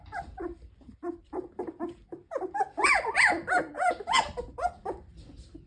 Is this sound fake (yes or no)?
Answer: yes